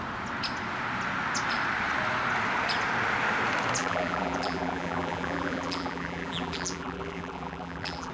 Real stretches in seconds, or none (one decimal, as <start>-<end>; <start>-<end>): 0.0-3.8